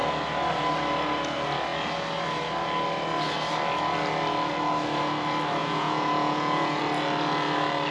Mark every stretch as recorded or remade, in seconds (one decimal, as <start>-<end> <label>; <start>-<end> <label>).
0.0-5.6 recorded; 5.6-6.8 remade; 6.8-7.9 recorded